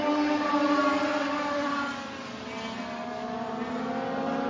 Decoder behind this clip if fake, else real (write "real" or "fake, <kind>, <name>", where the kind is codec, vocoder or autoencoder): real